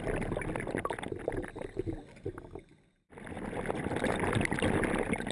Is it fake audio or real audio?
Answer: real